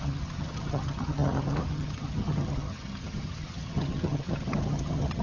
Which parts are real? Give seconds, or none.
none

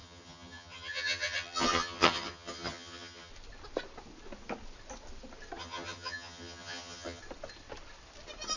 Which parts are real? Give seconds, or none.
3.3-5.6; 7.2-8.6

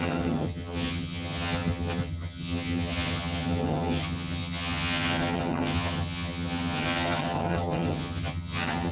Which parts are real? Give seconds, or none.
none

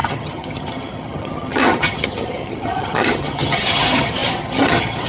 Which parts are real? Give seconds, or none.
none

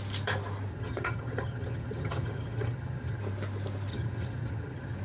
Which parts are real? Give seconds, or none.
0.0-0.7; 3.2-3.9

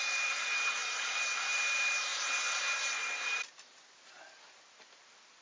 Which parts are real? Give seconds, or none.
0.0-5.4

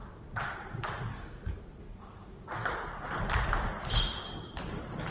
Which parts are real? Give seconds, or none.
0.0-5.1